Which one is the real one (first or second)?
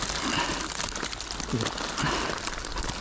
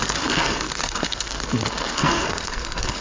first